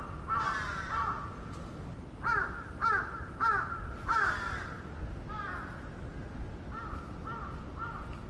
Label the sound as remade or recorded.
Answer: recorded